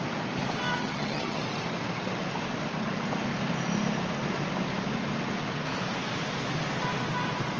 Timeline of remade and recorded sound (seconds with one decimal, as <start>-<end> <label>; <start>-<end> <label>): 0.0-0.7 recorded; 0.7-1.4 remade; 1.4-7.6 recorded